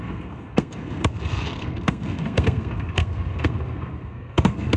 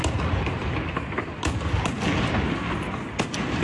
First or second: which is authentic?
second